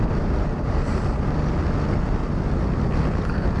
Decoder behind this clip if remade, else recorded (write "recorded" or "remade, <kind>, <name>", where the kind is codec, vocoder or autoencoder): recorded